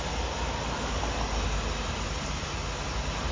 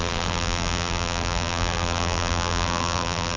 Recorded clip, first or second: first